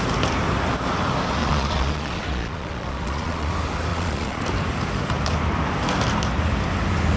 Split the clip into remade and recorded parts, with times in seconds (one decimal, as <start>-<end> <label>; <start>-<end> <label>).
0.0-1.4 recorded; 1.4-3.5 remade; 3.5-3.9 recorded; 3.9-4.4 remade; 4.4-7.2 recorded